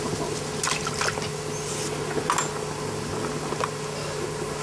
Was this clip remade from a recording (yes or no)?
no